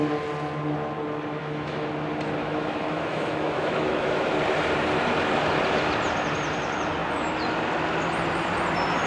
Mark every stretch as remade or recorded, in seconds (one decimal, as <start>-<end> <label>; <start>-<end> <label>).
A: 0.0-1.4 recorded; 1.4-1.9 remade; 1.9-2.4 recorded; 2.4-4.3 remade; 4.3-9.1 recorded